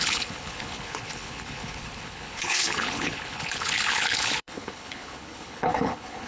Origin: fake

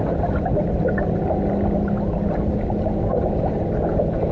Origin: real